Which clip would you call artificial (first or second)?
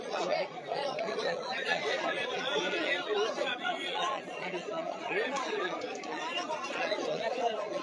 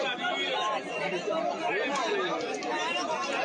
first